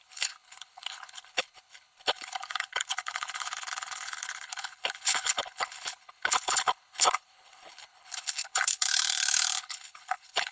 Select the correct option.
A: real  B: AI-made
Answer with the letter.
B